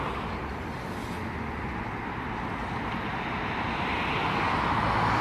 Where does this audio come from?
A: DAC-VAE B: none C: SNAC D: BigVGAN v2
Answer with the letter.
B